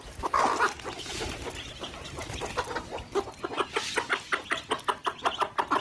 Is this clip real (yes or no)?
yes